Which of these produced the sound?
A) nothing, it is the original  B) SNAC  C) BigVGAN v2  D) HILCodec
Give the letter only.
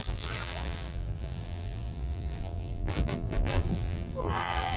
C